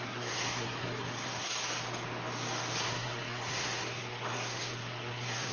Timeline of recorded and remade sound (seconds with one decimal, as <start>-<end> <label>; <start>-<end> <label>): 0.0-1.5 remade; 1.5-2.8 recorded; 2.8-5.5 remade